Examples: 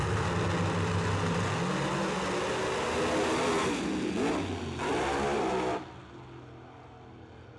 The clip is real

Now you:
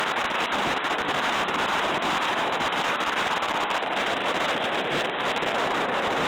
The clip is fake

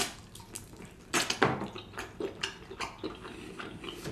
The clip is real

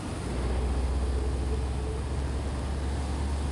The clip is real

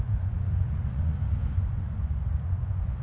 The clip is fake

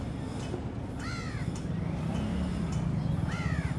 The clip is real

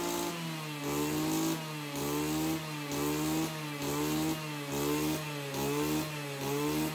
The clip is real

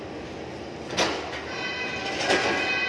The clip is real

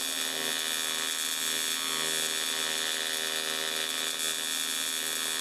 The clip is real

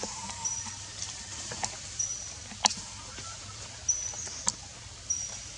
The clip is fake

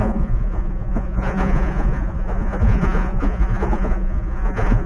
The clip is fake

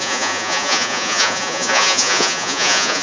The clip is fake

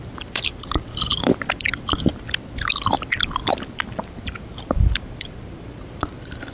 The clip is fake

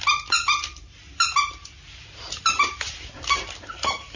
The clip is real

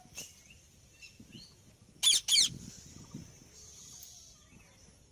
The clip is real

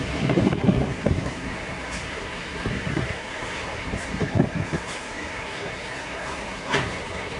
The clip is fake